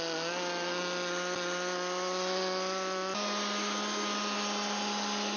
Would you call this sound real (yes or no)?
yes